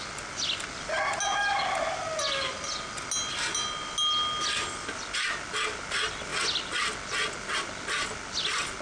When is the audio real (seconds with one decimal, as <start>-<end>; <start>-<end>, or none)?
0.0-8.8